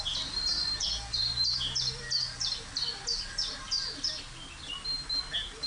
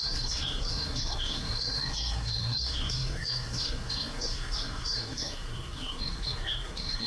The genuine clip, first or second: first